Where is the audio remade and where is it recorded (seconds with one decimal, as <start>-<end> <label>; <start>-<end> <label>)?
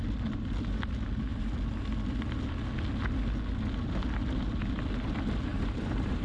0.0-5.5 recorded; 5.5-6.2 remade